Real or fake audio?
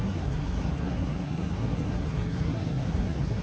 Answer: fake